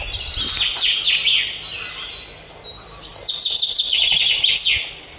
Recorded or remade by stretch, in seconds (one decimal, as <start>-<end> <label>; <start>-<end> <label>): 0.0-5.2 recorded